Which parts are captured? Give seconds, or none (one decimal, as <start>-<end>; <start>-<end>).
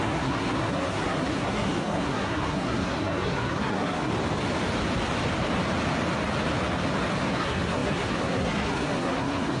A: 4.1-7.3